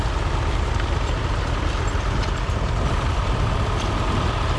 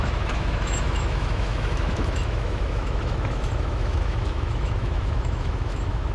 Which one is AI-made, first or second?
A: second